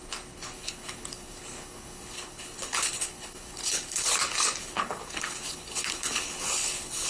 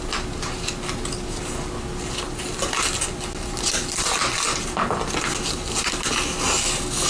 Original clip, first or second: second